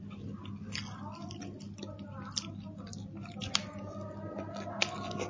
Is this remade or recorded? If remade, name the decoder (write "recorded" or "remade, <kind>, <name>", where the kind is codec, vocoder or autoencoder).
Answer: recorded